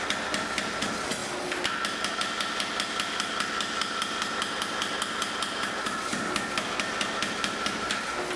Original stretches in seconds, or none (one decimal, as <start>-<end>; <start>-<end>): 0.0-8.4